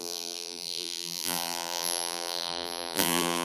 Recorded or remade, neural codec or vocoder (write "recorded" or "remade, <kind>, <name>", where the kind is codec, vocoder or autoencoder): remade, vocoder, BigVGAN v2